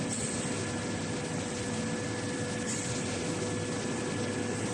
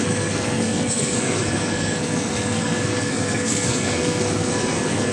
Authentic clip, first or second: first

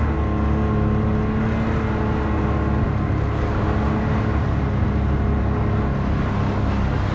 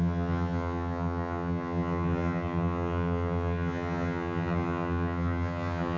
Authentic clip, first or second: first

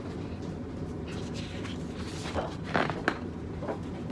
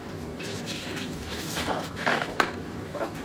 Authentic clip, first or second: first